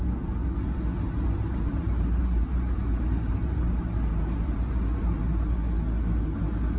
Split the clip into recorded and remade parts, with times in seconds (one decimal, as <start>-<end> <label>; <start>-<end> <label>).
0.0-1.4 recorded; 1.4-4.8 remade; 4.8-6.8 recorded